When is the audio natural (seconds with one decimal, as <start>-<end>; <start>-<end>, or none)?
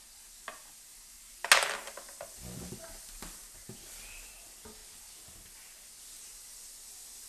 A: 0.0-7.3